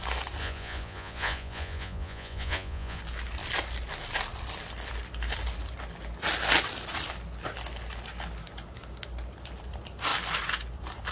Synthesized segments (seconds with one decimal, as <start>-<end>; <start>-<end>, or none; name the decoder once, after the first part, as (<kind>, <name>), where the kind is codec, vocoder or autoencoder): 0.4-3.0 (vocoder, Vocos)